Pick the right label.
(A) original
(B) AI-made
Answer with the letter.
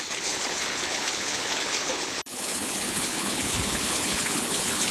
B